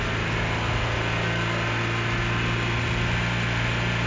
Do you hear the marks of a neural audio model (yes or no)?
no